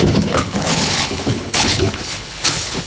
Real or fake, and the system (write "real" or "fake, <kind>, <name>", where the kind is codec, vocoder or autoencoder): fake, codec, HILCodec